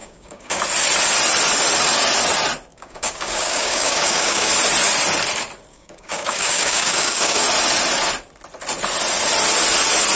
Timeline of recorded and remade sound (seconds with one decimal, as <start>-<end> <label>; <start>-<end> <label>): 0.0-0.6 remade; 0.6-2.7 recorded; 2.7-4.5 remade; 4.5-5.7 recorded; 5.7-7.4 remade; 7.4-10.2 recorded